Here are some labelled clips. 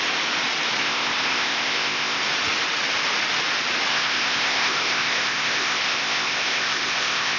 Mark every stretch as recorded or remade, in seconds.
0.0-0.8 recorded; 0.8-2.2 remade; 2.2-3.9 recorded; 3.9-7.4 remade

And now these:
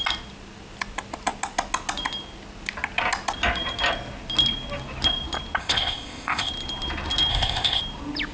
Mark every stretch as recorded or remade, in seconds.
0.0-5.6 recorded; 5.6-6.5 remade; 6.5-7.3 recorded; 7.3-7.8 remade; 7.8-8.3 recorded